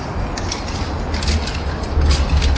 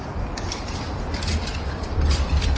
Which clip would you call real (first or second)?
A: first